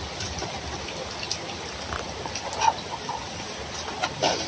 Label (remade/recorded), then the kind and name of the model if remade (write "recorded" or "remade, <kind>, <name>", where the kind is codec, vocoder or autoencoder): recorded